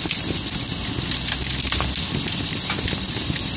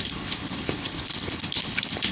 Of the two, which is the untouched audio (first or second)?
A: first